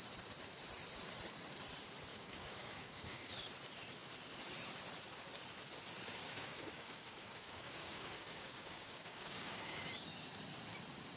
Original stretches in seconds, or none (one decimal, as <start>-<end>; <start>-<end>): 0.0-2.1; 3.3-6.2; 9.8-11.2